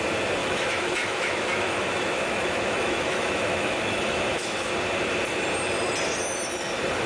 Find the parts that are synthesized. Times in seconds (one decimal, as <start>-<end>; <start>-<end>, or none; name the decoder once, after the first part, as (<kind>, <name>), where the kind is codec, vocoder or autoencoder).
0.4-4.7 (autoencoder, DAC-VAE)